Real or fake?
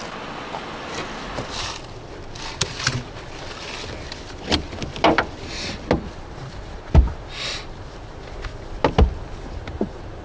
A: real